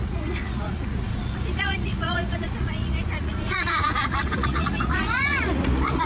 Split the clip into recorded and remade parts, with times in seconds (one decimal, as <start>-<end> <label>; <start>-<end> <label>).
0.0-6.1 remade